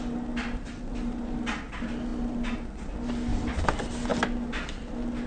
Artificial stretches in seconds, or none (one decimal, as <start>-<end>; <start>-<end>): none